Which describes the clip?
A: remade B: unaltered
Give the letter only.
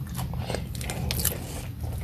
B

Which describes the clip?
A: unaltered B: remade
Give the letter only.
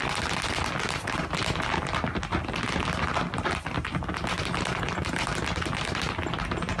A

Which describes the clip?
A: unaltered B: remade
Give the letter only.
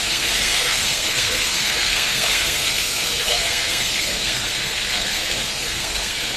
B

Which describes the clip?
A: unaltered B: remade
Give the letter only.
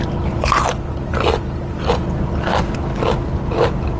A